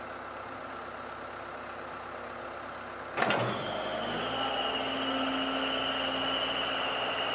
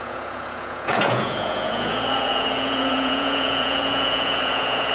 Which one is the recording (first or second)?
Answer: first